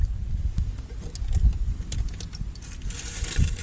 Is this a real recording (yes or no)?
yes